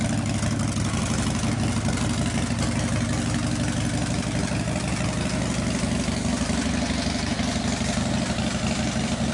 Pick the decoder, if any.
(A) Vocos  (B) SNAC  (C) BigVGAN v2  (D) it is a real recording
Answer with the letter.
D